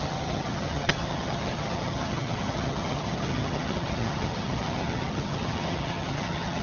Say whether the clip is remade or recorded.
remade